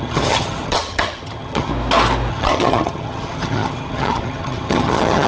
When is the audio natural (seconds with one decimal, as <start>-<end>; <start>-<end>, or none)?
1.7-2.3